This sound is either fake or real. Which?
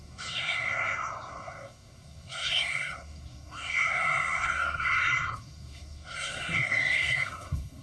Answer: fake